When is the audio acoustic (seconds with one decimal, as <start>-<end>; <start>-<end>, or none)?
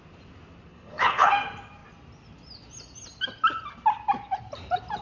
0.0-0.7; 1.3-5.0